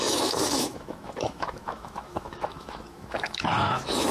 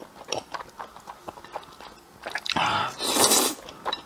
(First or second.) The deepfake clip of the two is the first